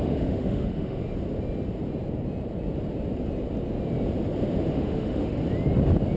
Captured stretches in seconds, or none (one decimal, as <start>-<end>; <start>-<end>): 1.0-4.7; 5.4-6.2